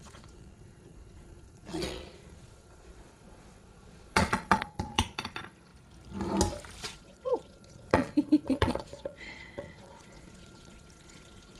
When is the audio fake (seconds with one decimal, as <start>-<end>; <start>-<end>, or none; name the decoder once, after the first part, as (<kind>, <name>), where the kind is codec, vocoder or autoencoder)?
0.0-5.7 (vocoder, Vocos); 6.8-11.6